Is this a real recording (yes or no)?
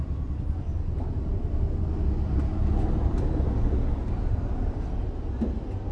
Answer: yes